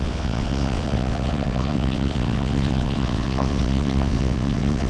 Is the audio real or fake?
fake